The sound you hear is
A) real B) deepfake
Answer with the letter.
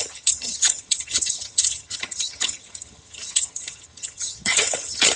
B